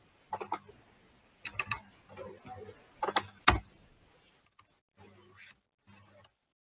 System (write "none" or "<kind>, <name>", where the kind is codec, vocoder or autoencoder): none